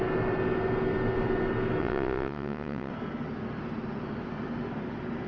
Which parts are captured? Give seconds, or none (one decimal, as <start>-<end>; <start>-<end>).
0.0-1.8; 2.9-5.3